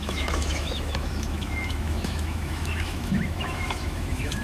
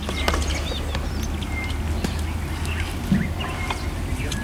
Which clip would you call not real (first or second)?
first